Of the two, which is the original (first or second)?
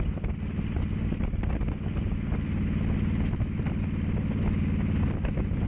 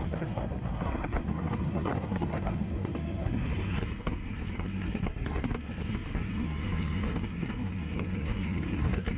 first